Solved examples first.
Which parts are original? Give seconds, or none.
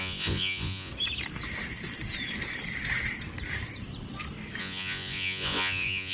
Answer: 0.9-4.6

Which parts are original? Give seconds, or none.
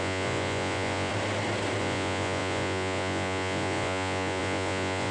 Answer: 1.1-1.8